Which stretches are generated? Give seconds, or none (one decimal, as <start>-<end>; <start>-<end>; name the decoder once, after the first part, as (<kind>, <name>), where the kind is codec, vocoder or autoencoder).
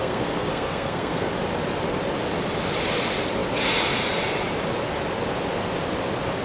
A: 0.0-1.3 (codec, SNAC)